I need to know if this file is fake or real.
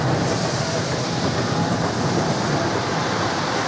fake